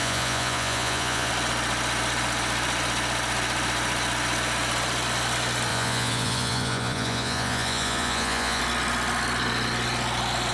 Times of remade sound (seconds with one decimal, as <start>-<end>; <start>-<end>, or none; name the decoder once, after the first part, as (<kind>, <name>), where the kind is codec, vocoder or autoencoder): 0.0-1.3 (vocoder, Vocos); 5.7-8.6